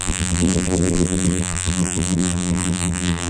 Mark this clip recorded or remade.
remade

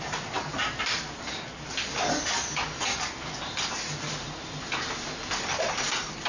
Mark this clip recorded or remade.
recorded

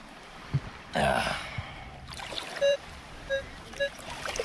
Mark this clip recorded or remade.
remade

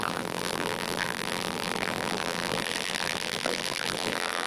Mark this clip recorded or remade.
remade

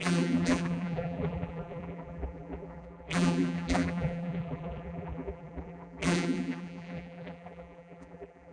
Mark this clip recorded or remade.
remade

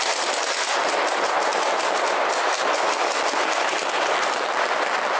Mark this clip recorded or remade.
remade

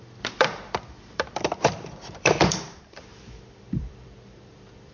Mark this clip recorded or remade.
remade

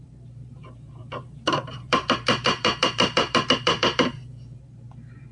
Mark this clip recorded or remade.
remade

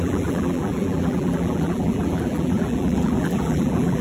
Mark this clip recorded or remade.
remade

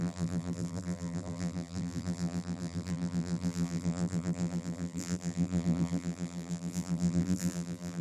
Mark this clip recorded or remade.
remade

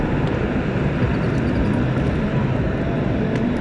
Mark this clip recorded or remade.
recorded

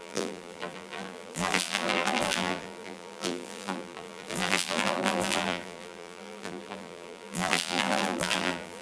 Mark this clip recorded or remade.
remade